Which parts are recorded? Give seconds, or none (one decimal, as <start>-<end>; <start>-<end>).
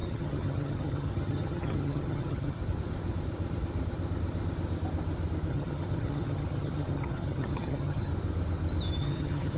2.6-5.5; 8.1-9.0